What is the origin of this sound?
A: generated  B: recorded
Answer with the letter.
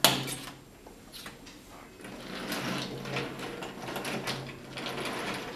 B